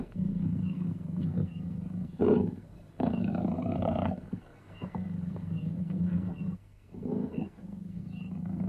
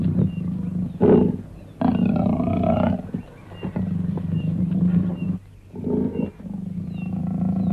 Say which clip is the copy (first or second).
first